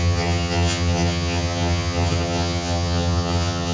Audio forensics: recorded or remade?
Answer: remade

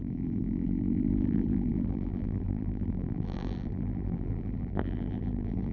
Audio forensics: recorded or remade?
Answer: remade